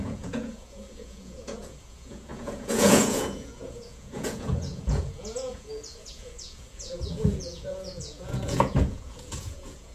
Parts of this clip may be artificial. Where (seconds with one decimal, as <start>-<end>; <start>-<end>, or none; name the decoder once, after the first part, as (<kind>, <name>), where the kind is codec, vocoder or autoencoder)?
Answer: 0.0-9.9 (vocoder, Vocos)